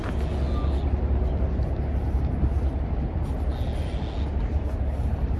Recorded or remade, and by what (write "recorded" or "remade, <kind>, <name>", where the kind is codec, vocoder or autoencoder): recorded